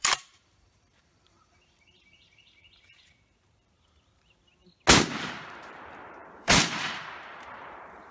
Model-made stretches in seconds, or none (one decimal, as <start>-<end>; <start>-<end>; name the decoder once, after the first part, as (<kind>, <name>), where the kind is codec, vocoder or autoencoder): 0.0-4.5 (vocoder, BigVGAN v2); 5.2-8.1